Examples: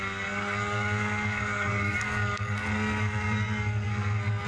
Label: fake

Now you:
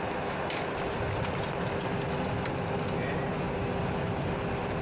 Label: real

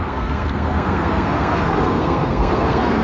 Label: fake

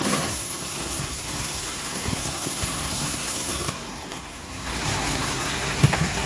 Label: fake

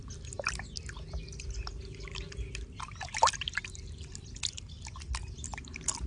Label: real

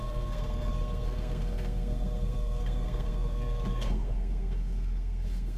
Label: fake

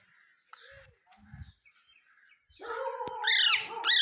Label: real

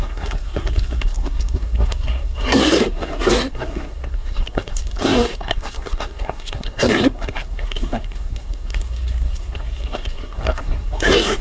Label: fake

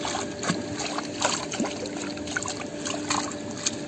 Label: real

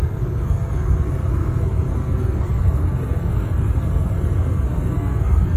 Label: fake